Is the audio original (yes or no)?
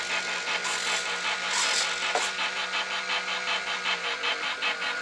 yes